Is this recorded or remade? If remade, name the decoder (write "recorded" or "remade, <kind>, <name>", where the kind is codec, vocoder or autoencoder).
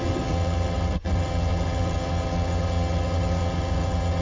remade, vocoder, HiFi-GAN